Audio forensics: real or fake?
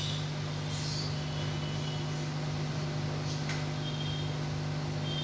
real